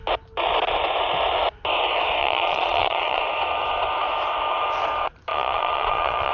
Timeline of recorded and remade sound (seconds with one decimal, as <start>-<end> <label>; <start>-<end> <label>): 0.0-2.2 recorded; 2.2-3.2 remade; 3.2-5.3 recorded; 5.3-6.3 remade